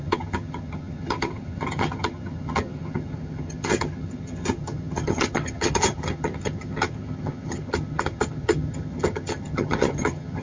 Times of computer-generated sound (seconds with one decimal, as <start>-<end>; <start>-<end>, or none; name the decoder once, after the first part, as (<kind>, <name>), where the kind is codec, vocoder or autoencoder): 0.0-10.4 (vocoder, HiFi-GAN)